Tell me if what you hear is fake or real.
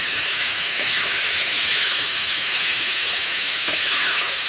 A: fake